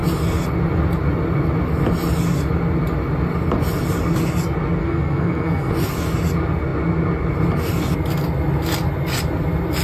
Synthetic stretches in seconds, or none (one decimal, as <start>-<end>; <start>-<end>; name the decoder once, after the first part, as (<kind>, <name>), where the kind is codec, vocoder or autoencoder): 4.8-5.7 (codec, SNAC)